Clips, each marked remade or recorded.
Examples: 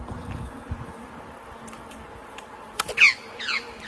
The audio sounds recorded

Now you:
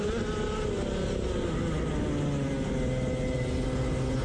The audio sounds recorded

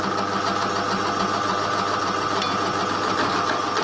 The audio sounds recorded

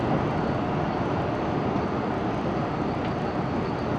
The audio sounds recorded